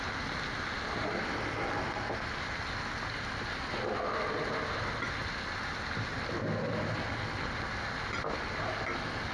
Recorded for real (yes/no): yes